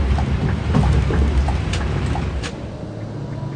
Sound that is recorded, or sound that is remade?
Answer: recorded